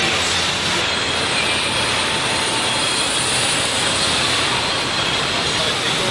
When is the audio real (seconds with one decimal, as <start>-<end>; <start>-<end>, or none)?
0.0-3.4; 4.2-6.1